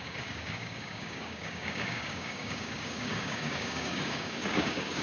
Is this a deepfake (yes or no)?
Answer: yes